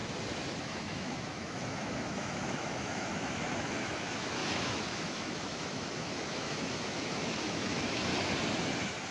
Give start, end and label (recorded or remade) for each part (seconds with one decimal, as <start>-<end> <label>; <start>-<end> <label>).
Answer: 0.0-0.6 recorded; 0.6-8.1 remade; 8.1-9.1 recorded